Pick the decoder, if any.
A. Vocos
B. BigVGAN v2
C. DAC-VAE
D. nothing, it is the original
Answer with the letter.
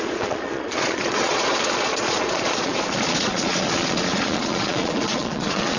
A